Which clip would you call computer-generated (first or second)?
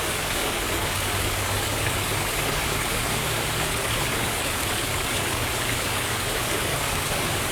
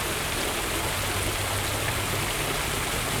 first